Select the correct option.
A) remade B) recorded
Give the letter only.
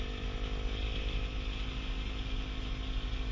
B